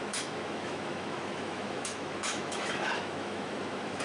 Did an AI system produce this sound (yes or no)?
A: yes